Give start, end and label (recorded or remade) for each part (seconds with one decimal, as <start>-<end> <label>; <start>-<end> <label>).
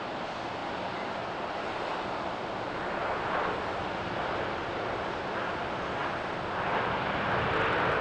0.0-8.0 recorded